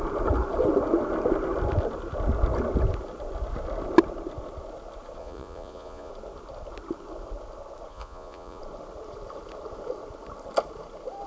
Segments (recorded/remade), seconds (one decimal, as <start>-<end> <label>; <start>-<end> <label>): 0.0-5.2 recorded; 5.2-6.1 remade; 6.1-7.9 recorded; 7.9-8.6 remade; 8.6-11.3 recorded